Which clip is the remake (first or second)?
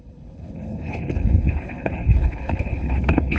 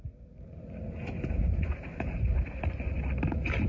first